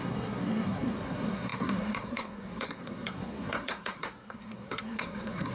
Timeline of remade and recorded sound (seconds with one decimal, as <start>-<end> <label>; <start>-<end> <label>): 0.0-5.5 remade